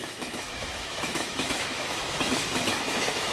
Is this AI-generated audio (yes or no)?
yes